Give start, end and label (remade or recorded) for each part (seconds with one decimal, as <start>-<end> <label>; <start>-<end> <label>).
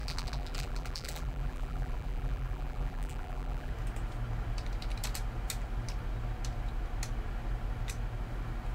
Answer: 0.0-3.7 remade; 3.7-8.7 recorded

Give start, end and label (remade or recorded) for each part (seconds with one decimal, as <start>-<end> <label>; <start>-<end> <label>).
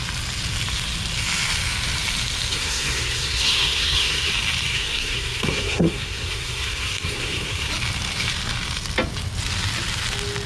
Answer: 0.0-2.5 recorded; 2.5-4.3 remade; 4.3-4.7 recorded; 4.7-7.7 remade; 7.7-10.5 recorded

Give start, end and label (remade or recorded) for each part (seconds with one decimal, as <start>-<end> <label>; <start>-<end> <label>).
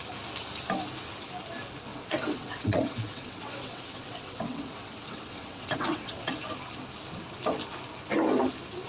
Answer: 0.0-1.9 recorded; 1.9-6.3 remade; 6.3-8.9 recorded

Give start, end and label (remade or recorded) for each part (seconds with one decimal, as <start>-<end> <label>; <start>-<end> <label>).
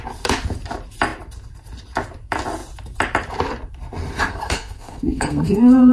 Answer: 0.0-4.3 recorded; 4.3-5.9 remade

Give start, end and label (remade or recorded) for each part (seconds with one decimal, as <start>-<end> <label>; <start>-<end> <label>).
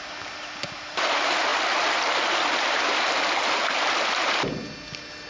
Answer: 0.0-5.3 recorded